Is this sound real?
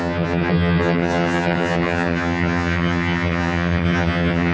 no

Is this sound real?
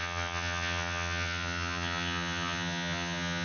no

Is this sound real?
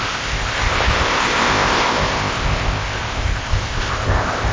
no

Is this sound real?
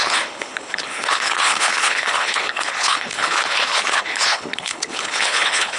no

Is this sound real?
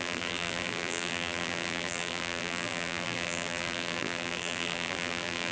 no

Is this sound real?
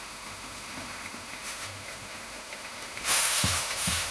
no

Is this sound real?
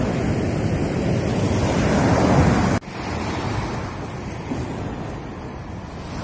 yes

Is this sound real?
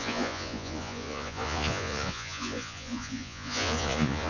no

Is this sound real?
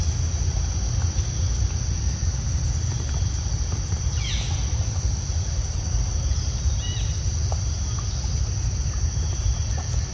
yes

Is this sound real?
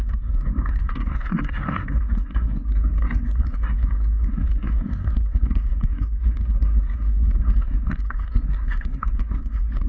no